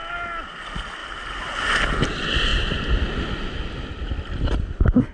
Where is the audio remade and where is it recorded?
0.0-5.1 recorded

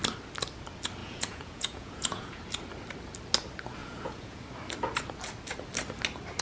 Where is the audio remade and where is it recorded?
0.0-1.0 recorded; 1.0-2.4 remade; 2.4-3.8 recorded; 3.8-4.4 remade; 4.4-6.4 recorded

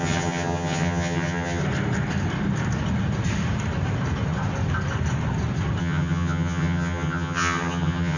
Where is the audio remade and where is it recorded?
0.0-1.6 remade; 1.6-5.8 recorded; 5.8-8.2 remade

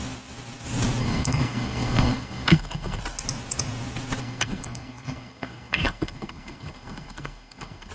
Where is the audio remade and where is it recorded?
0.0-1.0 recorded; 1.0-3.0 remade; 3.0-4.2 recorded; 4.2-7.9 remade

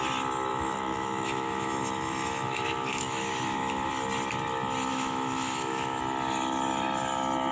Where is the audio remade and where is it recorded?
0.0-0.5 recorded; 0.5-3.9 remade; 3.9-4.9 recorded; 4.9-6.0 remade; 6.0-7.5 recorded